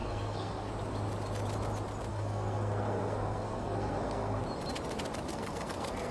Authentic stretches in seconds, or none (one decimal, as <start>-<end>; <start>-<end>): 0.7-2.1; 4.4-5.3